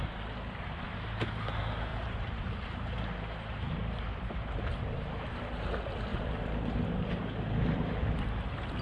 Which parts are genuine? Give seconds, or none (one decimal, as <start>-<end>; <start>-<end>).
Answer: 0.0-1.9; 5.4-6.1; 8.2-8.8